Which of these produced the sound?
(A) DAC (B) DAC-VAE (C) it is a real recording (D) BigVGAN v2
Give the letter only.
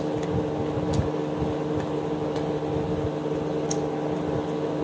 C